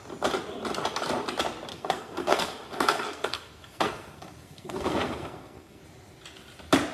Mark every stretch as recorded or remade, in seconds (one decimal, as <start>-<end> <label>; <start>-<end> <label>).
0.0-1.7 recorded; 1.7-5.8 remade; 5.8-6.9 recorded